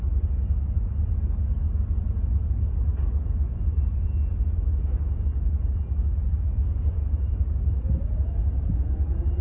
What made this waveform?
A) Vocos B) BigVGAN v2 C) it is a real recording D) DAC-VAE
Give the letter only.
C